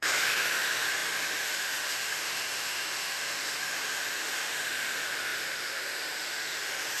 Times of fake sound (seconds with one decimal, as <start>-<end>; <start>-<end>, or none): 0.0-7.0